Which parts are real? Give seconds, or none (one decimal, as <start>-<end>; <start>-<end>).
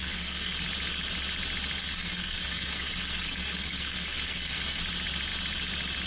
0.5-1.8; 4.8-6.1